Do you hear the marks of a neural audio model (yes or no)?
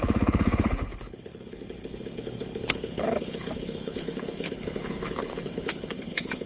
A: yes